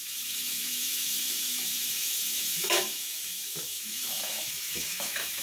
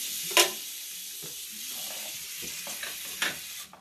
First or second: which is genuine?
second